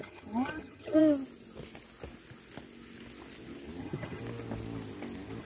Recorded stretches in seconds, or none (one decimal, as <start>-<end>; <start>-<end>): 1.0-3.8; 4.2-5.4

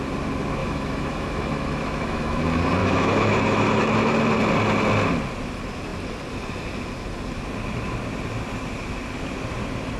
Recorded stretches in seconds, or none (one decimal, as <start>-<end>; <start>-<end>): 0.0-0.6; 2.4-2.8; 4.1-10.0

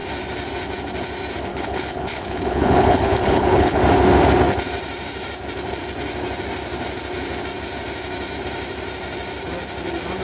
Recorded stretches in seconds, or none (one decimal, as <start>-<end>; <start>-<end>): 0.0-1.5; 3.8-10.2